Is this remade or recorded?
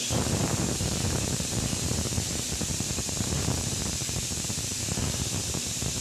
remade